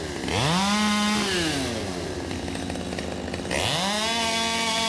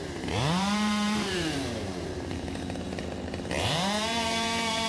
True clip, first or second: first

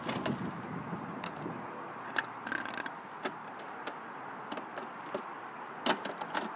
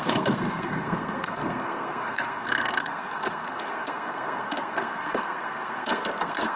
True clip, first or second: first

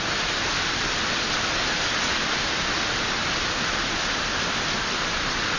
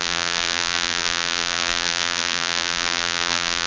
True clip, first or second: first